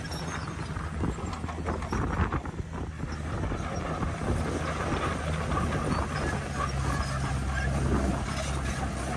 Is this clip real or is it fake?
real